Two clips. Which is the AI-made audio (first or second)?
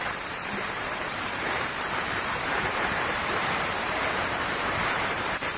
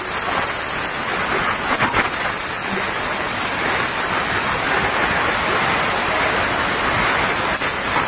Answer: first